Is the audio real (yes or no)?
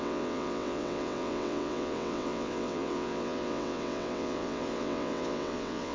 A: no